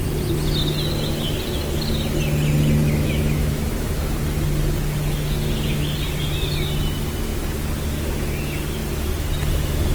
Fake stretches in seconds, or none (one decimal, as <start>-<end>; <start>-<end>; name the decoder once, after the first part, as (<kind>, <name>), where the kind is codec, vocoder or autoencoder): 2.8-4.1 (autoencoder, DAC-VAE)